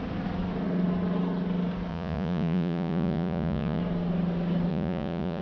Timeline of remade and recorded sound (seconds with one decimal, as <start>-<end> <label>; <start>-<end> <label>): 0.0-1.9 recorded; 1.9-3.8 remade; 3.8-4.7 recorded; 4.7-5.4 remade